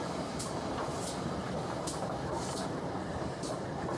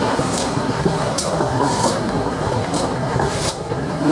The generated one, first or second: second